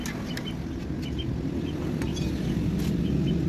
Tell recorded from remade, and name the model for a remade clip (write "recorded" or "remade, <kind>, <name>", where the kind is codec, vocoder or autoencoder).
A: recorded